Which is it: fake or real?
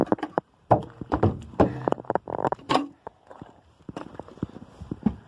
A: fake